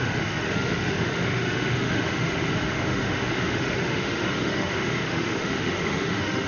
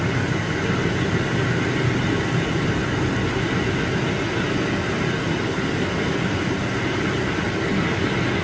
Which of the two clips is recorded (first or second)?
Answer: second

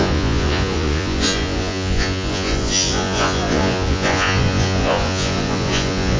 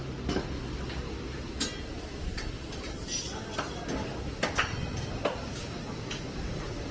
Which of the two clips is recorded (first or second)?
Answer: second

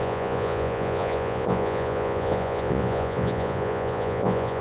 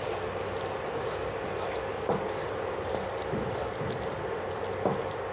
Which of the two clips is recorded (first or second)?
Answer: second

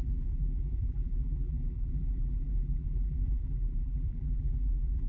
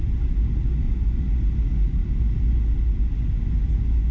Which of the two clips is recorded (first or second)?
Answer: second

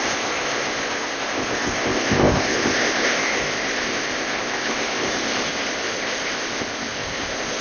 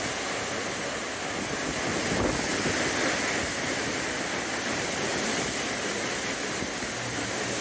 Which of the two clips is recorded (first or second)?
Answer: second